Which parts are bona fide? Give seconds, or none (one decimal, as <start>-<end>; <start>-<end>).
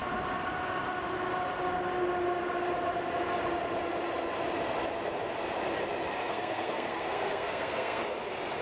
0.0-6.3; 8.0-8.6